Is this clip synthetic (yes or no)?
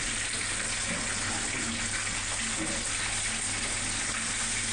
no